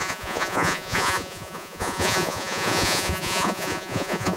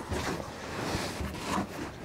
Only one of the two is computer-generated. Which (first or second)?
first